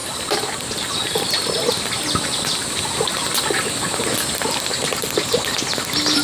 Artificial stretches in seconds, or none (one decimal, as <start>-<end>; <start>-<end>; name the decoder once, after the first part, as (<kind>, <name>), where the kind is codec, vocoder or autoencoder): 0.0-3.7 (vocoder, BigVGAN v2)